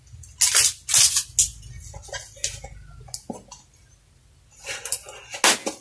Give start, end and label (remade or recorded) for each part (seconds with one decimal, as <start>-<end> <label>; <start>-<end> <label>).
0.0-5.8 recorded